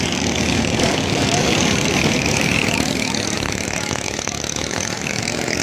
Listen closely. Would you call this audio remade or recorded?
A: remade